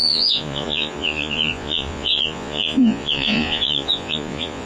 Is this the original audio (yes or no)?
no